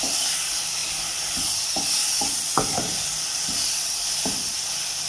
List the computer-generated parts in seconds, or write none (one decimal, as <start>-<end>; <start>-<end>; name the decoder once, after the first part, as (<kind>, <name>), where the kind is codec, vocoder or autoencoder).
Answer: none